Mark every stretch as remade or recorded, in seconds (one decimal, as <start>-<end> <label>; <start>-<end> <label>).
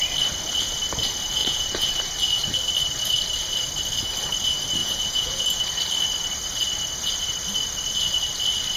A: 0.0-1.4 recorded; 1.4-1.9 remade; 1.9-4.8 recorded; 4.8-5.6 remade; 5.6-8.8 recorded